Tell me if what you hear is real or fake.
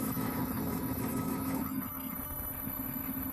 fake